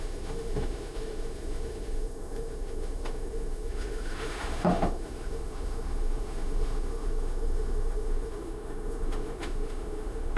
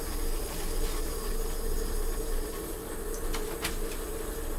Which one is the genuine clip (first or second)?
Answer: second